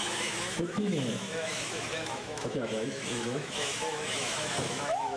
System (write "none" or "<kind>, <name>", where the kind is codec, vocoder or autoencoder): autoencoder, DAC-VAE